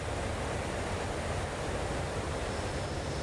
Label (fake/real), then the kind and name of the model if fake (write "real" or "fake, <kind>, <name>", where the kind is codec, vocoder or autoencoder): real